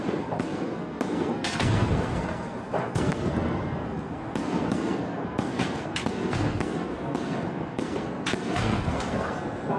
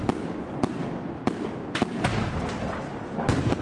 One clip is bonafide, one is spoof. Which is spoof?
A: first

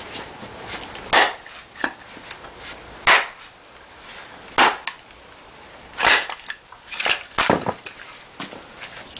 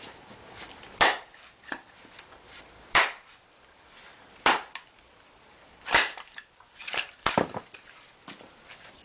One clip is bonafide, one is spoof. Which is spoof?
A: second